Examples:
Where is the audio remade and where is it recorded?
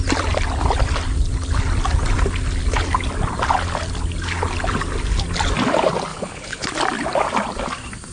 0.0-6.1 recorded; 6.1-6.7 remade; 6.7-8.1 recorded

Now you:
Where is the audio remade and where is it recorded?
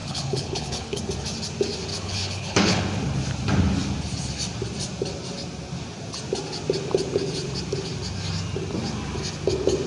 0.0-1.0 remade; 1.0-1.9 recorded; 1.9-2.8 remade; 2.8-9.9 recorded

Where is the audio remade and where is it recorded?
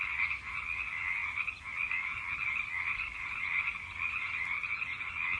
0.0-5.4 recorded